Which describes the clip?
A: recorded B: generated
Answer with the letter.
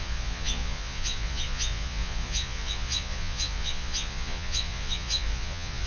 B